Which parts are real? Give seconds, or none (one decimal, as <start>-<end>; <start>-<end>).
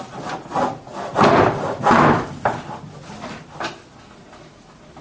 0.0-5.0